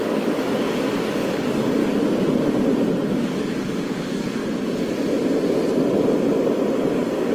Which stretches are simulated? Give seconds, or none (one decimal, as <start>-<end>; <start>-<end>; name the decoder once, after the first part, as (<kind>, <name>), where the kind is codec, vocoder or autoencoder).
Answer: 0.0-1.8 (codec, DAC); 3.1-4.4